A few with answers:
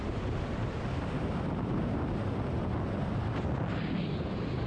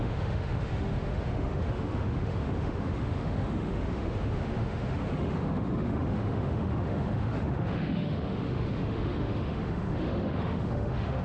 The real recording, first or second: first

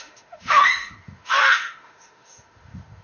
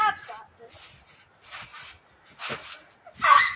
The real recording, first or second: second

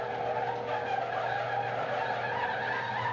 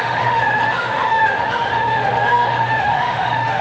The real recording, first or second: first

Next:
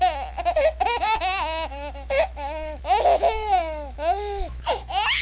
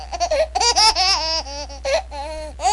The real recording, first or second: second